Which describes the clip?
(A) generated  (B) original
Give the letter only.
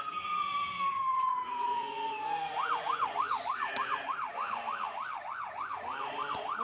A